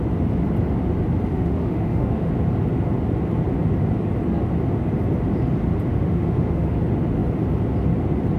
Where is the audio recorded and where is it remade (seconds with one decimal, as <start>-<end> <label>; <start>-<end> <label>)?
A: 0.0-1.3 recorded; 1.3-2.3 remade; 2.3-5.9 recorded; 5.9-6.8 remade; 6.8-8.4 recorded